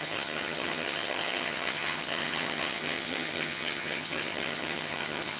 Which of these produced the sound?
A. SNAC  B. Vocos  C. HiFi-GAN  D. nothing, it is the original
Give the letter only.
C